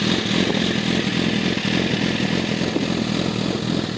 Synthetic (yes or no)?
no